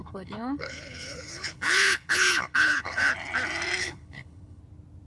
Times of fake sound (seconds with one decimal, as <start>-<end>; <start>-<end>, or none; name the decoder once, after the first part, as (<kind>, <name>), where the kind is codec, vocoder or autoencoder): 0.0-3.1 (codec, HILCodec); 3.8-4.6